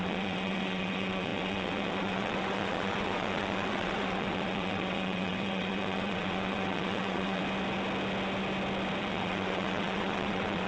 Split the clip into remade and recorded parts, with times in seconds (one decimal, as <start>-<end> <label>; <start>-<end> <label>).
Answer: 0.0-7.4 remade; 7.4-9.0 recorded; 9.0-10.7 remade